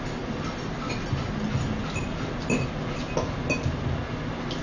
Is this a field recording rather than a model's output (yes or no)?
yes